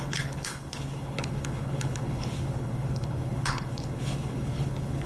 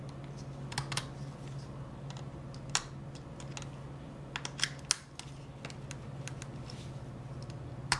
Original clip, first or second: second